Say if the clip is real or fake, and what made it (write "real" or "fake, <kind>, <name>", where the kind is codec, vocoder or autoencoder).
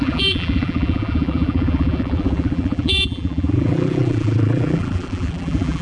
fake, vocoder, BigVGAN v2